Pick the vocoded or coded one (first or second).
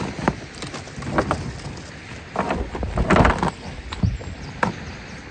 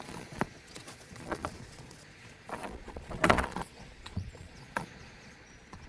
second